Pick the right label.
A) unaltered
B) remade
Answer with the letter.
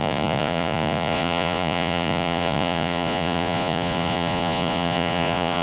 B